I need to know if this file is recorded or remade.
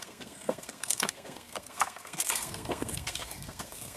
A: remade